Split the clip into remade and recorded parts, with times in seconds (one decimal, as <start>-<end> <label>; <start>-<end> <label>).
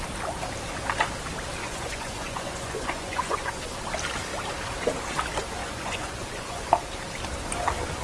0.0-1.6 recorded; 1.6-3.5 remade; 3.5-5.6 recorded; 5.6-6.7 remade; 6.7-8.0 recorded